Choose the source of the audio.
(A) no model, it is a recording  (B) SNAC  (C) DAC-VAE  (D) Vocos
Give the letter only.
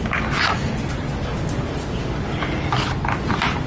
A